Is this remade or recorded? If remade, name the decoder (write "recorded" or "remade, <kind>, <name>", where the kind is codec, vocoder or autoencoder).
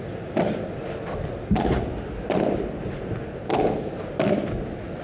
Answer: recorded